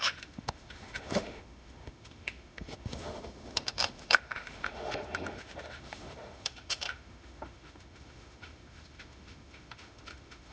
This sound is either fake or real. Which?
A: fake